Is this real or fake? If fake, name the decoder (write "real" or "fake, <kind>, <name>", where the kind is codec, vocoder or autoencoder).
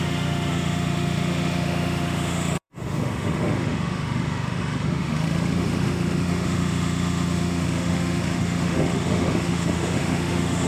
fake, autoencoder, DAC-VAE